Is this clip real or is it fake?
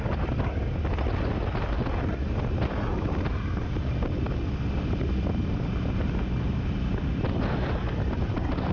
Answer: real